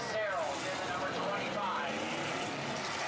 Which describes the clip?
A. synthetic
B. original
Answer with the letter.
B